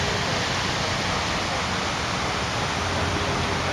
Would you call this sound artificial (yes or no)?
no